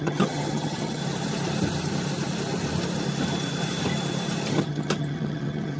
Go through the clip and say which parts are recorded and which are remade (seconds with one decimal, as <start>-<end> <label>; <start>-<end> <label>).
0.0-1.0 remade; 1.0-4.5 recorded; 4.5-5.8 remade